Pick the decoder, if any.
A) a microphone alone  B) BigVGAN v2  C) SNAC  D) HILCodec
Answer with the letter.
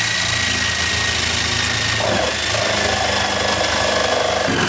A